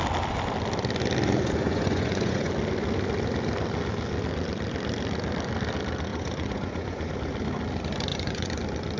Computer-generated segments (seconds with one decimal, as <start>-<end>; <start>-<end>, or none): 1.6-2.5; 6.1-7.1; 8.1-8.6